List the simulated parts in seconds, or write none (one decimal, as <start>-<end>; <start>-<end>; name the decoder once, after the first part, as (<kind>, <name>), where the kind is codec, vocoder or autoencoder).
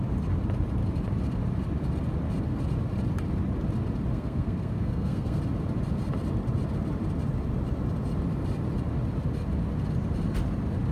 4.1-5.4 (codec, SNAC)